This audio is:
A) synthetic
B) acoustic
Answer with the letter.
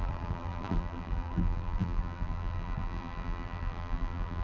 A